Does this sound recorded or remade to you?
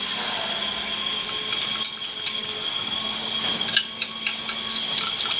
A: recorded